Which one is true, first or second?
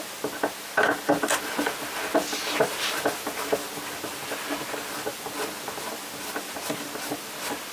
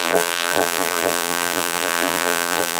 first